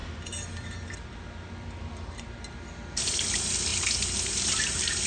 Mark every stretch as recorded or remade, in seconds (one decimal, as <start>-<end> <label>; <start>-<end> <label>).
0.0-5.1 recorded